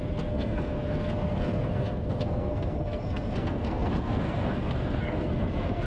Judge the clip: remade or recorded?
remade